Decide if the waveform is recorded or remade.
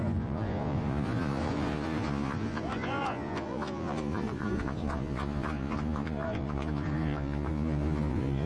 remade